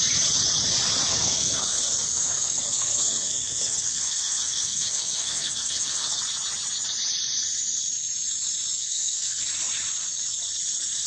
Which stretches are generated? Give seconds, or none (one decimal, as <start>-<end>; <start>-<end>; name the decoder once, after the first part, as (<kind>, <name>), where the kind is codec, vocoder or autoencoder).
1.1-6.2 (codec, SNAC); 8.8-9.4